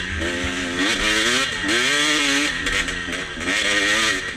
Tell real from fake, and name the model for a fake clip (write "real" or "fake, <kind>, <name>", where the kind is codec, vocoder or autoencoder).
real